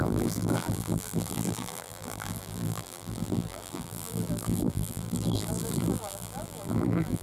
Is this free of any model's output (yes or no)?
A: no